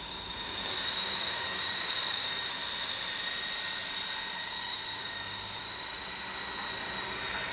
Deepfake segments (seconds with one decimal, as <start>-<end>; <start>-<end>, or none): 0.0-2.6; 4.4-5.6